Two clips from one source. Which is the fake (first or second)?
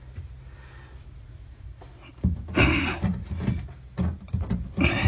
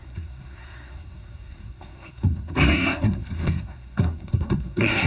second